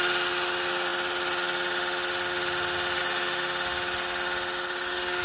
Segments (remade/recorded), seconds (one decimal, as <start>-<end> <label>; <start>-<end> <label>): 0.0-5.2 recorded